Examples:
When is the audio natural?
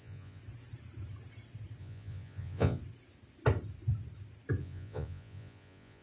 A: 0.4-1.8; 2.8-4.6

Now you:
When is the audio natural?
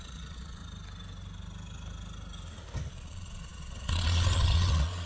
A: 0.6-2.9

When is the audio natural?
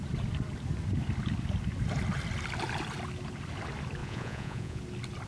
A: 0.0-4.0; 4.8-5.3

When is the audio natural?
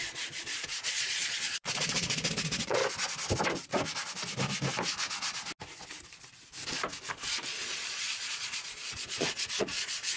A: 2.8-7.1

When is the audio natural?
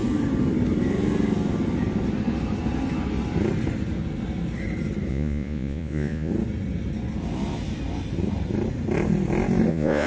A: 0.0-5.1; 6.3-9.7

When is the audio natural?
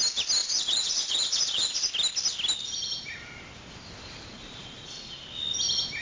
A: 0.0-0.4; 1.9-4.3; 5.2-6.0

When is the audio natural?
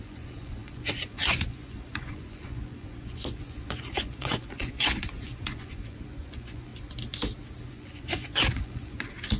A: 6.7-7.7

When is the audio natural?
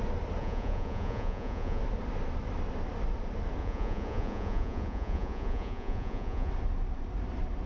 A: 0.0-0.4; 1.8-3.6; 6.5-7.7